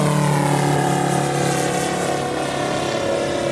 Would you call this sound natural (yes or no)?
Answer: yes